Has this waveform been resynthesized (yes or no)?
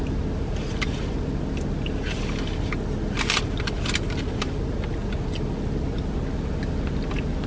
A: no